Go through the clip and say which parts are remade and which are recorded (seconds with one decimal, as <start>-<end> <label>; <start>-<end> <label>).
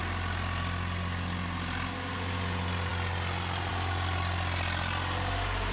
0.0-5.7 recorded